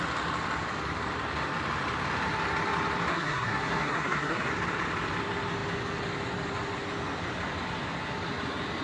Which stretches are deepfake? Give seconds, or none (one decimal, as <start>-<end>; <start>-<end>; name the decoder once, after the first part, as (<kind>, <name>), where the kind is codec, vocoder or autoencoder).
3.1-4.5 (codec, SNAC)